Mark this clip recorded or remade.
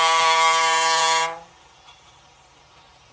remade